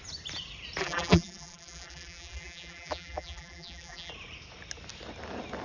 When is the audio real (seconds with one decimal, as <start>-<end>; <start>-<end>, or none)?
0.0-0.8; 4.1-5.6